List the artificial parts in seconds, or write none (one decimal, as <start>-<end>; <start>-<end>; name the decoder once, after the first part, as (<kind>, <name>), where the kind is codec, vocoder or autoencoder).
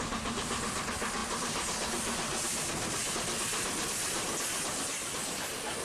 none